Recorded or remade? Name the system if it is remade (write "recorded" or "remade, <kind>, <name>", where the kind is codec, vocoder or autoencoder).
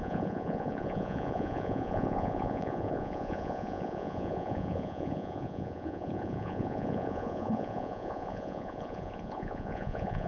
remade, vocoder, Vocos